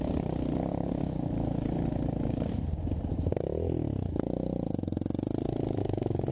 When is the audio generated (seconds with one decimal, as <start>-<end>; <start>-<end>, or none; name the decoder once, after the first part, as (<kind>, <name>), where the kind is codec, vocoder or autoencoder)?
5.8-6.3 (codec, DAC)